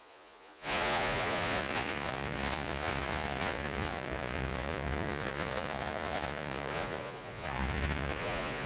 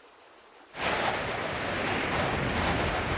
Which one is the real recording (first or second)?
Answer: second